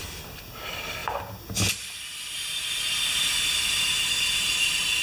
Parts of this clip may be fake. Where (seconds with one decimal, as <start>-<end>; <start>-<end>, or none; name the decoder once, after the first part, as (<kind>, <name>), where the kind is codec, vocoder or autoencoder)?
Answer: none